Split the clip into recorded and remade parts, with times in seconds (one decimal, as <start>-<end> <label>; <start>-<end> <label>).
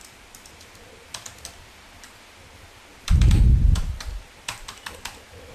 0.0-2.9 recorded; 2.9-4.6 remade; 4.6-5.5 recorded